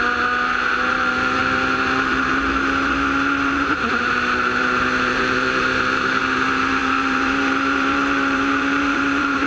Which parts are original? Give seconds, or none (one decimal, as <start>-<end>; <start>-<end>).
none

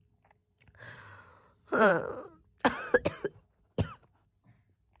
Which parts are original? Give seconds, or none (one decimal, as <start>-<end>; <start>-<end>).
0.0-0.4; 2.1-5.0